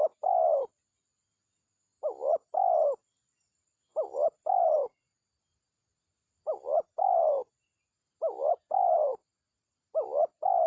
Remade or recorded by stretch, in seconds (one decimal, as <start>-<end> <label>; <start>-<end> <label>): 0.0-10.7 recorded